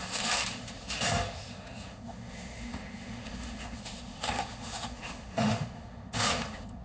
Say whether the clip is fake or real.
fake